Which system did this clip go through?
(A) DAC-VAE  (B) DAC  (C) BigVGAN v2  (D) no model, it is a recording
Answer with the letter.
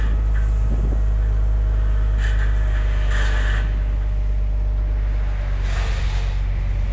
D